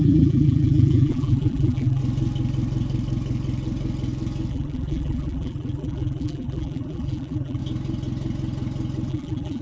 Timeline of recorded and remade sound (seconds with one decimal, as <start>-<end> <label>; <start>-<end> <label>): 0.0-2.0 remade; 2.0-4.5 recorded; 4.5-7.6 remade; 7.6-9.1 recorded; 9.1-9.6 remade